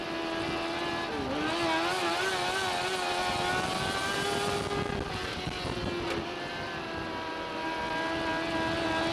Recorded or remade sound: recorded